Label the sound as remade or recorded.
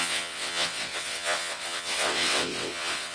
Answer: remade